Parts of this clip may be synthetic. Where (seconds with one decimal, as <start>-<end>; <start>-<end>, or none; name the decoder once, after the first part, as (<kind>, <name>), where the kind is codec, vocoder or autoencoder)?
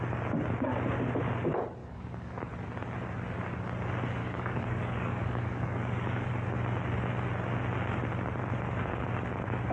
1.8-2.5 (codec, DAC); 4.2-6.3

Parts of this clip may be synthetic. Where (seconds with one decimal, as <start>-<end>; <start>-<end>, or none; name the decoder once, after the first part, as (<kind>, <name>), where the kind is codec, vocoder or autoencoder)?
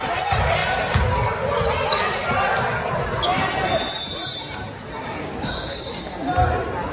5.2-5.7 (codec, DAC)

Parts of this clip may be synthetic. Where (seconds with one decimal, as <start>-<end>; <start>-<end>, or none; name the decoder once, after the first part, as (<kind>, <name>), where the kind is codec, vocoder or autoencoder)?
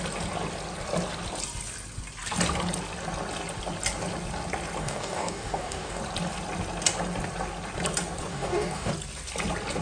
4.8-6.0 (codec, DAC); 8.3-8.9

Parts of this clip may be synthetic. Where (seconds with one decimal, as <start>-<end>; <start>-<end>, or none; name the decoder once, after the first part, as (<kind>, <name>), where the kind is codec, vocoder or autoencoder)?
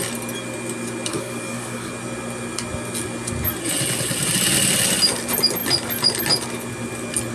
1.1-1.9 (codec, DAC)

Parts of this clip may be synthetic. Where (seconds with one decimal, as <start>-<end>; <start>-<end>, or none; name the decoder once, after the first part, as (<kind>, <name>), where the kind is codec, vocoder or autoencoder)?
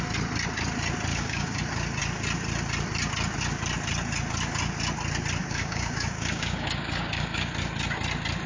1.1-1.6 (codec, DAC); 5.4-7.5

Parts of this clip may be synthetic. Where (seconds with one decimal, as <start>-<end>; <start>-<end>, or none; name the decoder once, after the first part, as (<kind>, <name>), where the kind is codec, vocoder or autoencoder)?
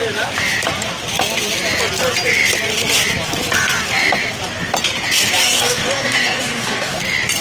5.4-7.0 (codec, DAC)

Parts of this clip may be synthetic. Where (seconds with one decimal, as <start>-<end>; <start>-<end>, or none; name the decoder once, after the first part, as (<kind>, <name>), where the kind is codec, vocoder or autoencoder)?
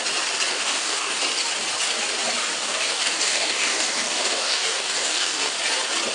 0.5-1.2 (codec, DAC); 2.6-5.5